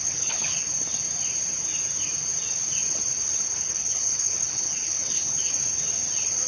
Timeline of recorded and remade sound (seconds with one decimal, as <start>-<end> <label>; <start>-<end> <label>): 0.0-0.7 remade; 0.7-3.5 recorded; 3.5-5.5 remade; 5.5-6.5 recorded